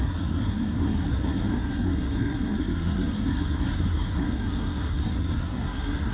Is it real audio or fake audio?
fake